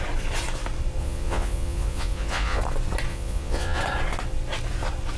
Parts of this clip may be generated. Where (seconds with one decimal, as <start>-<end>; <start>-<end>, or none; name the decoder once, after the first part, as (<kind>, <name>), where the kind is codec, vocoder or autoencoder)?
1.0-2.6 (vocoder, Vocos); 3.1-3.8